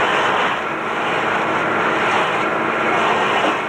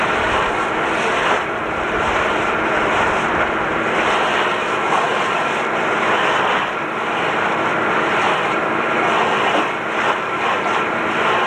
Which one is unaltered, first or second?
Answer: first